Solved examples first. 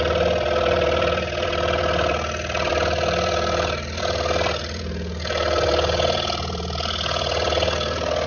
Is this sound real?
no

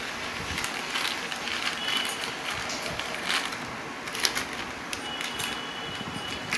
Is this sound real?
yes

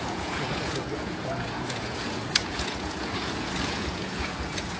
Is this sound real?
no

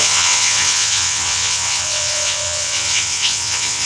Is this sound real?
no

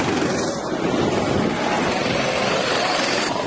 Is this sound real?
yes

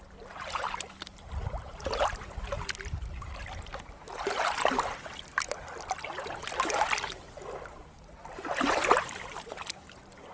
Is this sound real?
yes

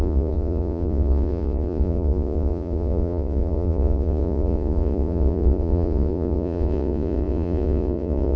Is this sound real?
no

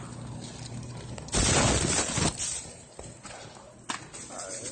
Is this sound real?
yes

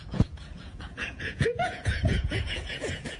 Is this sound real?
no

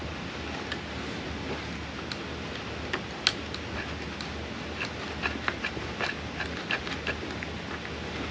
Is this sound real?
yes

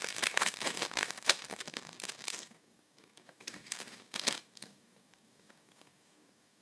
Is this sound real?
no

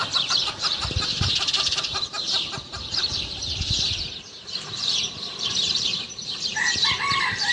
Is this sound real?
no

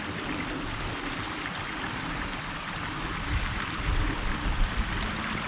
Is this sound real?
yes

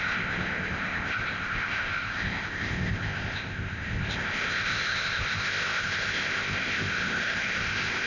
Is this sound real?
no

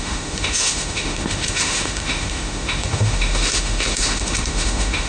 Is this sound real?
no